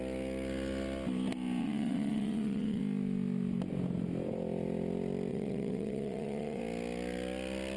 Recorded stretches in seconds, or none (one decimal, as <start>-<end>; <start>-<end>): 0.0-1.6; 2.8-5.3; 6.6-7.8